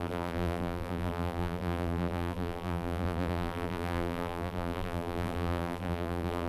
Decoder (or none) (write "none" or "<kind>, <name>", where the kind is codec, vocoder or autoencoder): vocoder, BigVGAN v2